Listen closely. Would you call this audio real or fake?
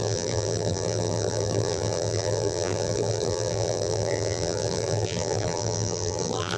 fake